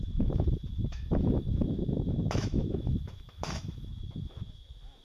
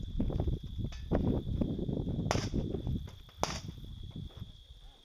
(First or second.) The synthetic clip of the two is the first